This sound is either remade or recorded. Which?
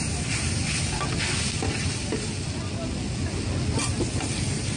recorded